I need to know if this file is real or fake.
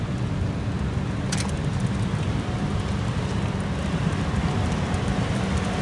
real